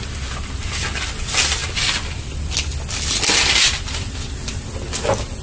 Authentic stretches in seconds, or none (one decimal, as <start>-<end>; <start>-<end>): 0.0-5.4